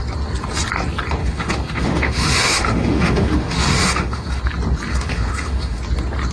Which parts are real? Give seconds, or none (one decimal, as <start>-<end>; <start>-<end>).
0.0-1.2; 4.4-4.9; 5.8-6.3